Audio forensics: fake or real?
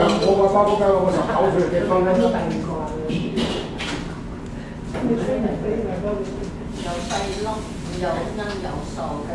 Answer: real